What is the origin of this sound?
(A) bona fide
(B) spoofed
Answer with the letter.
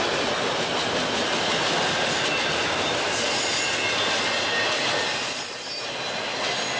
A